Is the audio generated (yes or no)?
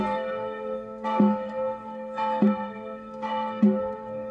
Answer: yes